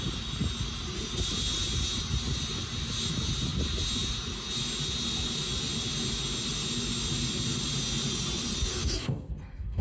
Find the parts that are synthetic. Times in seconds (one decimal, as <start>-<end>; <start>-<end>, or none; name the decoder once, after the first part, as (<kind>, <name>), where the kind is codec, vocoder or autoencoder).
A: 8.7-9.8 (codec, SNAC)